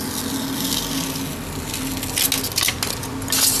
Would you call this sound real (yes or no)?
yes